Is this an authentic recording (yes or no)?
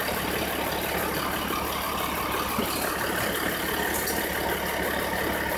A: yes